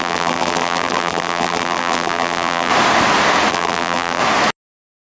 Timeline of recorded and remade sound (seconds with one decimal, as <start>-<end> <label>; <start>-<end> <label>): 0.0-2.7 remade; 2.7-3.5 recorded; 3.5-4.2 remade; 4.2-5.1 recorded